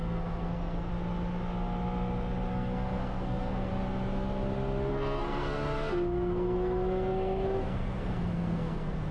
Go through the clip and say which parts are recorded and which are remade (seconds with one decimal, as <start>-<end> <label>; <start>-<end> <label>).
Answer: 0.0-0.9 remade; 0.9-2.5 recorded; 2.5-3.7 remade; 3.7-4.9 recorded; 4.9-9.1 remade